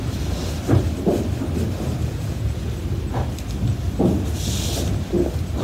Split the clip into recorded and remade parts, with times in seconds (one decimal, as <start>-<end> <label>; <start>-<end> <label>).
0.0-2.0 recorded; 2.0-2.7 remade; 2.7-5.6 recorded